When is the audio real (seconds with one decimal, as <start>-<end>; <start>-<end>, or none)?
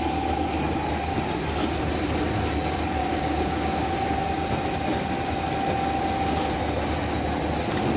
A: 0.0-3.0; 3.9-8.0